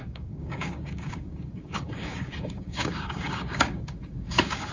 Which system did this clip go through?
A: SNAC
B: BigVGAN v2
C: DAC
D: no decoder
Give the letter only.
C